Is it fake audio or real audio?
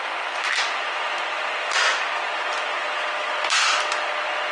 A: real